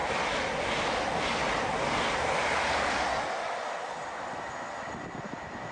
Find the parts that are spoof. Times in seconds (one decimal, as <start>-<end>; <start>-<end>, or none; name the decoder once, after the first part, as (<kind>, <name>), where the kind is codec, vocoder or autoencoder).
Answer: none